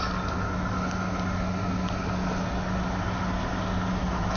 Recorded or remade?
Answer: recorded